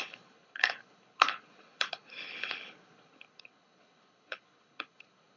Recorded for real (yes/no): no